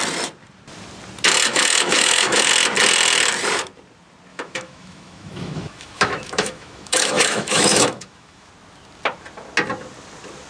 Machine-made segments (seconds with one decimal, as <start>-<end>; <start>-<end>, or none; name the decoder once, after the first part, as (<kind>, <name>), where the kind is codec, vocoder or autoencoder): 1.5-2.5 (autoencoder, DAC-VAE); 4.3-8.5